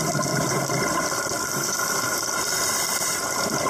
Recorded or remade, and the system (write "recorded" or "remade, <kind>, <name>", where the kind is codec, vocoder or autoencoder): remade, vocoder, BigVGAN v2